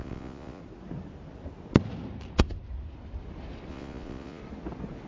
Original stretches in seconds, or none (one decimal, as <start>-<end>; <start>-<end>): 0.6-3.7; 4.4-5.1